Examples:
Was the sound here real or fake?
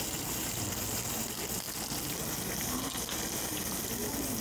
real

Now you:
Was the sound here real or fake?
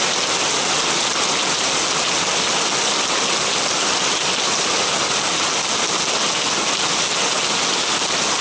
real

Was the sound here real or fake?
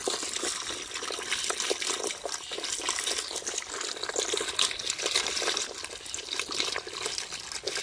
real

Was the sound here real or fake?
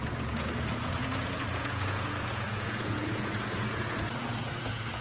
fake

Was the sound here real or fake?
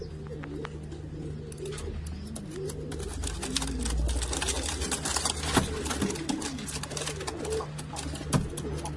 real